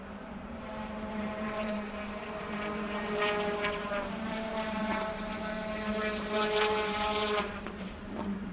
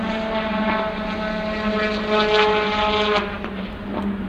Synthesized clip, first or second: first